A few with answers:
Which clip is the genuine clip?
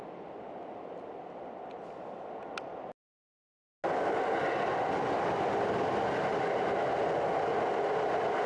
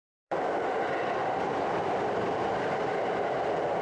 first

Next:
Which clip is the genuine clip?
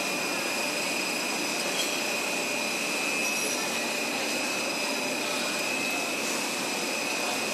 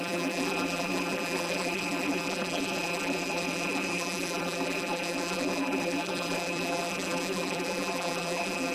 first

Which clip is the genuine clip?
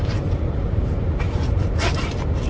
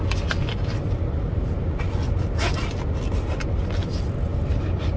second